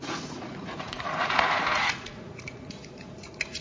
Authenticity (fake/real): fake